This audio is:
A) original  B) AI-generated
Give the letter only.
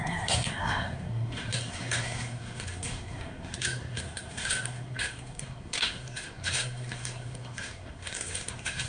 B